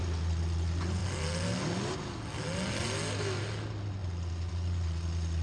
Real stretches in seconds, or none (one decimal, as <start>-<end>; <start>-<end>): 0.0-5.4